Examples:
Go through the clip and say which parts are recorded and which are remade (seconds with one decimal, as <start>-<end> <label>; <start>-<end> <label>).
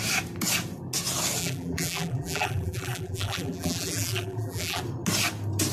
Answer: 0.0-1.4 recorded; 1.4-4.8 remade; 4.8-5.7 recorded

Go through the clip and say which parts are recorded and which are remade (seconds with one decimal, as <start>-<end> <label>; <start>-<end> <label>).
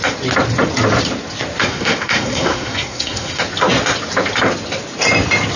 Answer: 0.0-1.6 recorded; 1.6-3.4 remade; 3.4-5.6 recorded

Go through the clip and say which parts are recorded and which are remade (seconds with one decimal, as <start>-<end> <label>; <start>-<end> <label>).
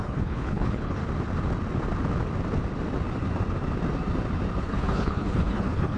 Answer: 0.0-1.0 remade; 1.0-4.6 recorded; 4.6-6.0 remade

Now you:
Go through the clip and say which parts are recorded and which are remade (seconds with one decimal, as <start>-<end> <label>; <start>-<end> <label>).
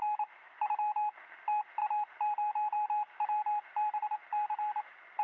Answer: 0.0-1.8 recorded; 1.8-5.2 remade